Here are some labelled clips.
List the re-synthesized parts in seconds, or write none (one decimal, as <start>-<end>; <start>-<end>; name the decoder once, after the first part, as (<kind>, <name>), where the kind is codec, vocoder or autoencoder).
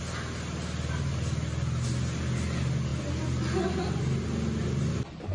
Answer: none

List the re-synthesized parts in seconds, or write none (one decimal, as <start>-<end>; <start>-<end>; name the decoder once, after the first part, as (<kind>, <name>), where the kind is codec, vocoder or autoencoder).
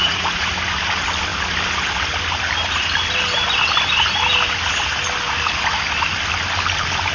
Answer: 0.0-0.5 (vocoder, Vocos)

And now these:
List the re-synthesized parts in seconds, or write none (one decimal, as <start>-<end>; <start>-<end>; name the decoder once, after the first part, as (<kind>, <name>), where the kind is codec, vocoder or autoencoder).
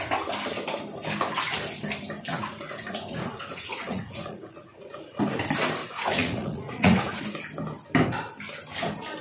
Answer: 2.3-5.2 (vocoder, Vocos); 5.8-7.2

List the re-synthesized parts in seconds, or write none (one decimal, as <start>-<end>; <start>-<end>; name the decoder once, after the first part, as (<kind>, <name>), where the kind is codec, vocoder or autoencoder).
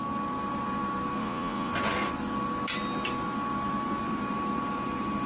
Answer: 1.2-1.7 (vocoder, Vocos)